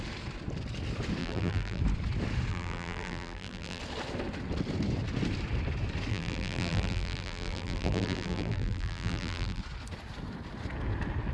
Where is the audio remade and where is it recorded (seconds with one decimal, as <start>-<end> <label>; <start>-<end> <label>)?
0.0-1.2 recorded; 1.2-1.8 remade; 1.8-2.5 recorded; 2.5-3.8 remade; 3.8-6.1 recorded; 6.1-9.6 remade; 9.6-11.3 recorded